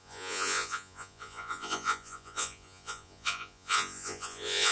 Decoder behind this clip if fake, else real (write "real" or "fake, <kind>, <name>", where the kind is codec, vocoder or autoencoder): fake, vocoder, Vocos